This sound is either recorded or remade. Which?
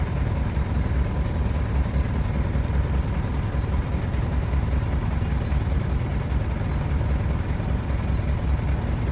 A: remade